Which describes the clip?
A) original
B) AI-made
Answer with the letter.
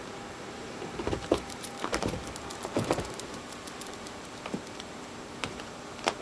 B